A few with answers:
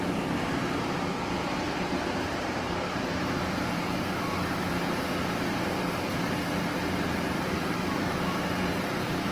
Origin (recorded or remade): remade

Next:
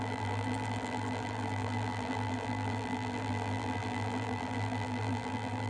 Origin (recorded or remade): remade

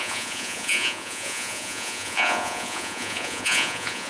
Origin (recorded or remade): remade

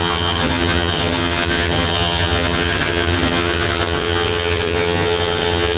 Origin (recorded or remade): remade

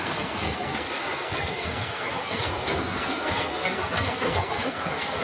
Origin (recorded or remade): remade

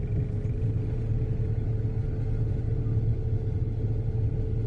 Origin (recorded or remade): recorded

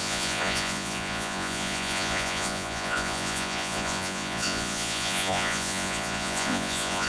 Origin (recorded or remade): remade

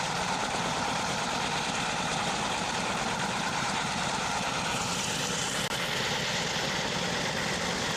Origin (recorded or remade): recorded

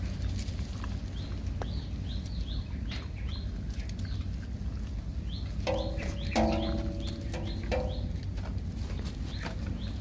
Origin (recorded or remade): recorded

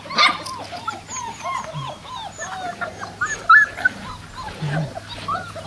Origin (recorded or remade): recorded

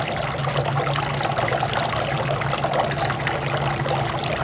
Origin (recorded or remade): recorded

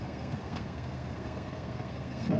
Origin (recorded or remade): remade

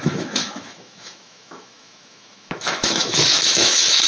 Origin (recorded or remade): remade